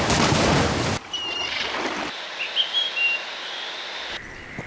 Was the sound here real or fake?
real